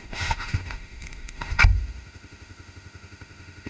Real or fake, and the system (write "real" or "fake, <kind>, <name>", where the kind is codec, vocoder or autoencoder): fake, autoencoder, DAC-VAE